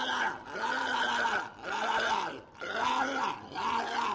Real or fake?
real